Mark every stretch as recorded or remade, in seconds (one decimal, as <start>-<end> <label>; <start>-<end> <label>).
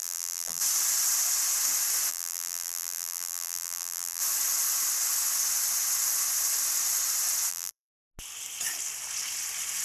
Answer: 0.0-0.6 remade; 0.6-2.1 recorded; 2.1-4.2 remade; 4.2-7.5 recorded; 7.5-8.1 remade; 8.1-9.8 recorded